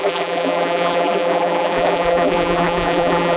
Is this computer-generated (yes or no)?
yes